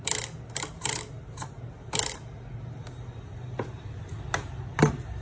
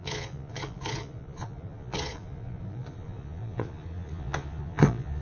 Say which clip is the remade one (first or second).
second